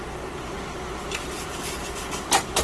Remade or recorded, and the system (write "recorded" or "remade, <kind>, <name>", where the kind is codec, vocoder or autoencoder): remade, vocoder, BigVGAN v2